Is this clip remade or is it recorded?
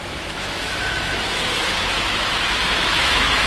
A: remade